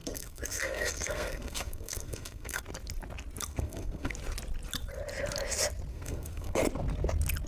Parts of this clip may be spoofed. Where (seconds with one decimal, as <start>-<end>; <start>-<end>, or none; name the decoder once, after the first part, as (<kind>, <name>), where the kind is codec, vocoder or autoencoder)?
0.0-2.6 (codec, SNAC); 3.5-4.1; 5.9-6.6